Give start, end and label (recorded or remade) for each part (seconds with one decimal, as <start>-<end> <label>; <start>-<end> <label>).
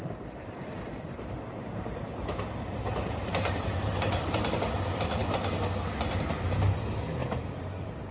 0.0-4.6 remade; 4.6-7.2 recorded; 7.2-8.1 remade